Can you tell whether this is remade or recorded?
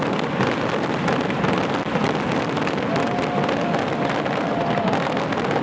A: recorded